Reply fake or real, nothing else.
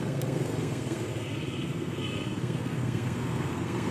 fake